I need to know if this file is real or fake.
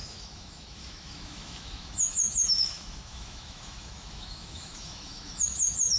fake